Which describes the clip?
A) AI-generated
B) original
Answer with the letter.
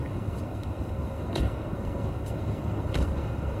A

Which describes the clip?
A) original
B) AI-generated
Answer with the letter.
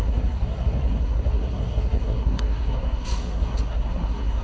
B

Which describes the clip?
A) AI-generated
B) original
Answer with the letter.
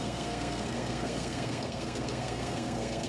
A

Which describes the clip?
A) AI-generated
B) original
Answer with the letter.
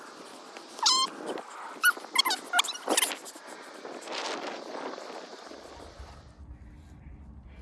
B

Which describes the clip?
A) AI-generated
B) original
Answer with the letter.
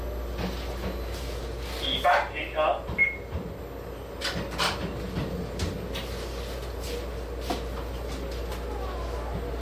B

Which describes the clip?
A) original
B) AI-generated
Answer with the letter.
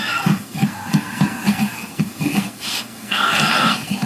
B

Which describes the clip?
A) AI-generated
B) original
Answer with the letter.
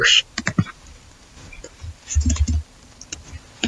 B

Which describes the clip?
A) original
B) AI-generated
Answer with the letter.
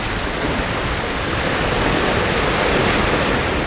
A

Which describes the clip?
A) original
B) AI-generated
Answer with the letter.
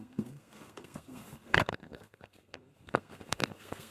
B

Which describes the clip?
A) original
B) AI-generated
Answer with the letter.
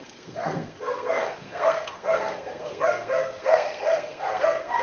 B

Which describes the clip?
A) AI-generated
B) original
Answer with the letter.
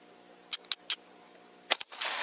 B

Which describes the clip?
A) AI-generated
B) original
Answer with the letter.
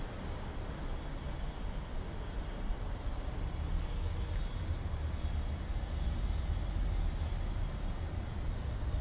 B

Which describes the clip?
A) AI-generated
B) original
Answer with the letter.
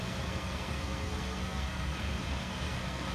A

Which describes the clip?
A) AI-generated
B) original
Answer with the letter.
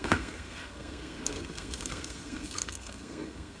A